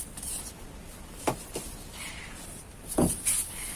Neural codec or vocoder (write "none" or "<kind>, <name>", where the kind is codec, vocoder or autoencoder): none